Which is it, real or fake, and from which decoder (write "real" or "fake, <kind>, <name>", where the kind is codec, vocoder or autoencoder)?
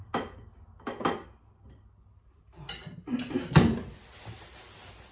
real